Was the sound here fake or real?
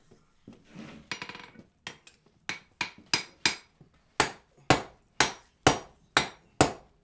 real